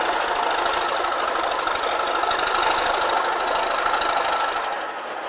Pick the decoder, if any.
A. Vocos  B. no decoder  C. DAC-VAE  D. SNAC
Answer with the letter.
B